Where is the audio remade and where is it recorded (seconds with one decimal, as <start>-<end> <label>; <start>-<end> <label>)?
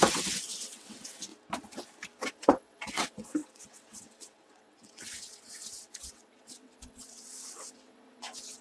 0.0-1.3 remade; 1.3-2.3 recorded; 2.3-8.6 remade